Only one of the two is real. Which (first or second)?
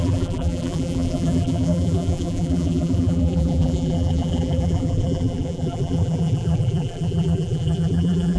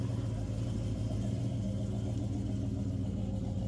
second